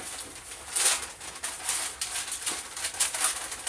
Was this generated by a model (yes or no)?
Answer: no